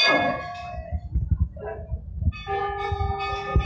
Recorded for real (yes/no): yes